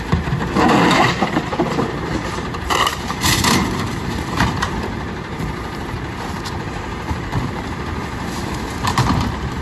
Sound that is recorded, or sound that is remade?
remade